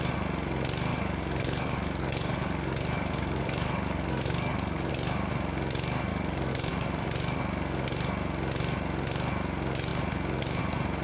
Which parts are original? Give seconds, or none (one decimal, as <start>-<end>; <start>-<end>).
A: 0.0-0.9; 4.9-6.1; 6.7-11.0